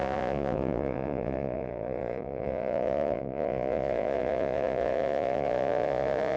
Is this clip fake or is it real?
fake